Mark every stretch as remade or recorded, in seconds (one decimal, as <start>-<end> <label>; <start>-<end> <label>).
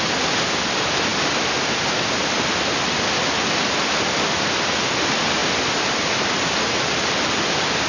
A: 0.0-7.9 recorded